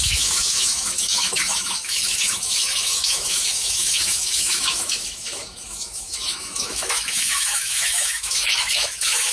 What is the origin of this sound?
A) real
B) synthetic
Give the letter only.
B